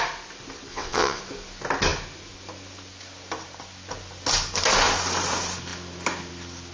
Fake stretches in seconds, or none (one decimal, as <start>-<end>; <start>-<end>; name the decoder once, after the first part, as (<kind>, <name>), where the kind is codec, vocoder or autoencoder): 0.7-1.2 (vocoder, WaveNeXt)